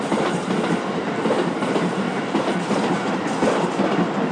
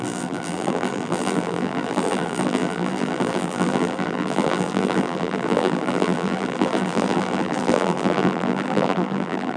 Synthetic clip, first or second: second